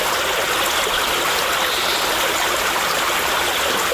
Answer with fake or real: real